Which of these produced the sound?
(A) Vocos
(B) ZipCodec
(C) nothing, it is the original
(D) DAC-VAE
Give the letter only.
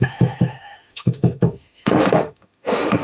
D